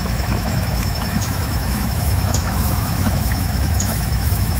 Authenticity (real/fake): fake